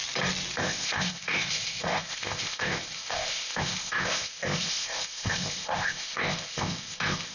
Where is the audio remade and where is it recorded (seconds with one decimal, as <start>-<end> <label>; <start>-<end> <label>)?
0.0-0.6 recorded; 0.6-7.3 remade